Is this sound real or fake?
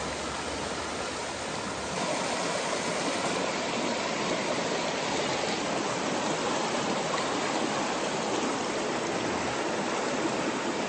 real